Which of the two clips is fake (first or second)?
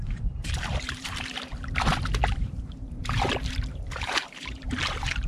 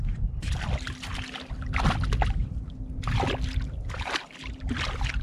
first